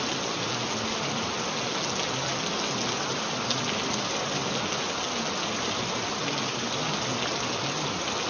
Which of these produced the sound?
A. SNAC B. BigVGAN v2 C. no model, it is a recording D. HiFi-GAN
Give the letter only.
C